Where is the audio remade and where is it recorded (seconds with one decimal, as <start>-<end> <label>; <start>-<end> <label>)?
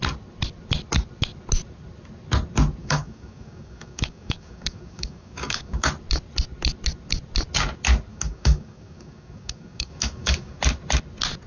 0.0-2.8 recorded; 2.8-5.9 remade; 5.9-8.1 recorded; 8.1-10.6 remade; 10.6-11.5 recorded